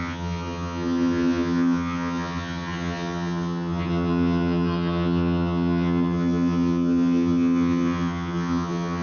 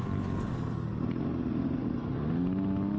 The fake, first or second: first